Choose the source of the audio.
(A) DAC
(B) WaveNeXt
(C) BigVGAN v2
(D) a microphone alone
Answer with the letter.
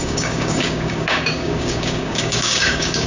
A